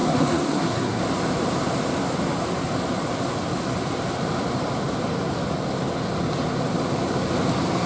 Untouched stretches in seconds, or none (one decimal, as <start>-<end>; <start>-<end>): 1.0-7.9